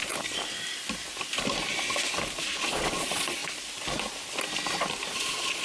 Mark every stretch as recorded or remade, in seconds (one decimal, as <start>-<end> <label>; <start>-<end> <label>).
0.0-2.4 recorded; 2.4-3.4 remade; 3.4-5.1 recorded; 5.1-5.6 remade